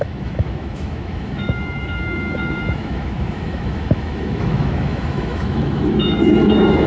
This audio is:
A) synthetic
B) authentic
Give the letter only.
A